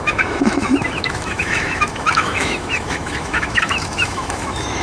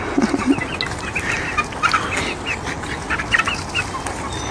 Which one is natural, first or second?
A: second